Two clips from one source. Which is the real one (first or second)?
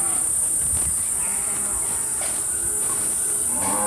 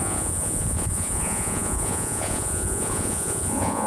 first